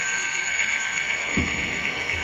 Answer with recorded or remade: remade